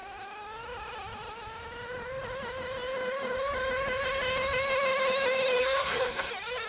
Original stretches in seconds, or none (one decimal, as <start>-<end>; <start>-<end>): 0.0-5.6; 6.3-6.7